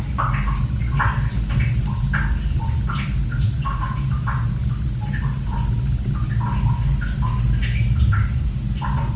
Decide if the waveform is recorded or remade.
recorded